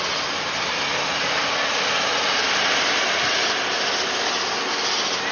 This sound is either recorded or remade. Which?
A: recorded